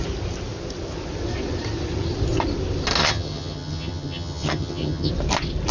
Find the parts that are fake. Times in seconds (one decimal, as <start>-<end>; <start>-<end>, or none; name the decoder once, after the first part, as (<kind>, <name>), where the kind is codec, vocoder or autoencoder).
3.0-5.1 (vocoder, HiFi-GAN)

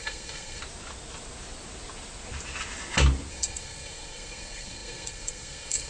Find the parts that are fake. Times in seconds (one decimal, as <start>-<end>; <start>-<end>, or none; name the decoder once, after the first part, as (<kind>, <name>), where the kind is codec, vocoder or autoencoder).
0.0-0.6 (codec, SNAC); 3.3-5.9

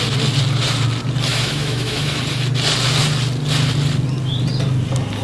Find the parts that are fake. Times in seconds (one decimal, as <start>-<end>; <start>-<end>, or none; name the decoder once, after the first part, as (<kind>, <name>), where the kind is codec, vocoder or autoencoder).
1.3-2.2 (autoencoder, DAC-VAE)

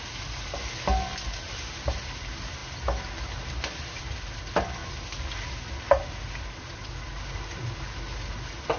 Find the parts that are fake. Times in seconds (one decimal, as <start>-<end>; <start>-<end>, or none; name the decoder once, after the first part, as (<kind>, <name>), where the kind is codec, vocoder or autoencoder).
none

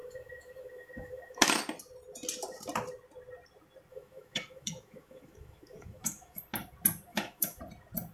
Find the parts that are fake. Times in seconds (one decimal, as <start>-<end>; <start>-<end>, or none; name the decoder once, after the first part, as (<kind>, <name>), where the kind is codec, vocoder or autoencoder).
0.0-1.6 (autoencoder, DAC-VAE); 3.9-6.4; 7.1-7.6

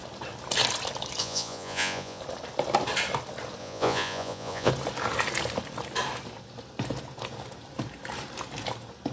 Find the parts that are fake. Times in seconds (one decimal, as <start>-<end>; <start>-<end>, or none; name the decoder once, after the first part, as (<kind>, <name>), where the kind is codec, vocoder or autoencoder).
1.2-2.2 (vocoder, Vocos); 3.6-4.7

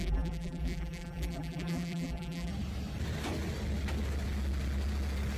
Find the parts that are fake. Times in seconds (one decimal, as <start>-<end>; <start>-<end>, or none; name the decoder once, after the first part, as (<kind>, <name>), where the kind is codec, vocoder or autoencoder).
0.0-2.5 (vocoder, BigVGAN v2)

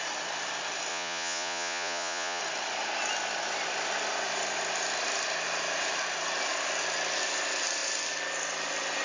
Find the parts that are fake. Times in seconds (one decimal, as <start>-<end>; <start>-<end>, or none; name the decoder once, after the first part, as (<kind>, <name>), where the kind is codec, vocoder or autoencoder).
0.9-2.4 (vocoder, Vocos)